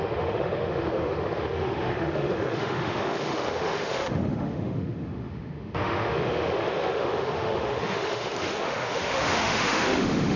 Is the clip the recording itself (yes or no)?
no